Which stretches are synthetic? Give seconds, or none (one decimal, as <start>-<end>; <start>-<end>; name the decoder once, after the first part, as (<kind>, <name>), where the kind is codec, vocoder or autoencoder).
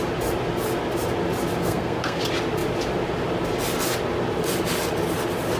1.6-2.2 (codec, SNAC)